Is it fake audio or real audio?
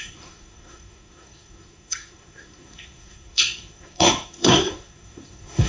fake